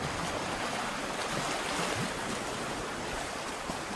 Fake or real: real